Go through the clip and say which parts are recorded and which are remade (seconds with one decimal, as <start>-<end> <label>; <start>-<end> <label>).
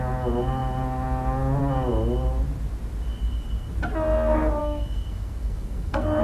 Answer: 0.0-3.2 recorded; 3.2-3.7 remade; 3.7-4.6 recorded; 4.6-6.2 remade